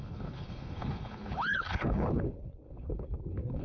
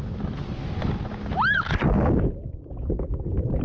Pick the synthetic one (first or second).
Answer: first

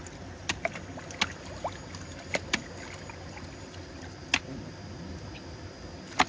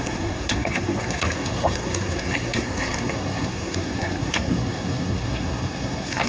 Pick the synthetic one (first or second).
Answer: second